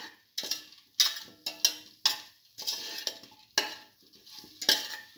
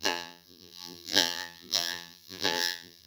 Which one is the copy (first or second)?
second